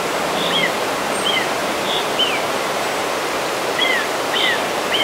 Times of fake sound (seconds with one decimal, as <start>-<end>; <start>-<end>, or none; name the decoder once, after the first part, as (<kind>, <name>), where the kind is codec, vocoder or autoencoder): 1.6-3.1 (vocoder, BigVGAN v2)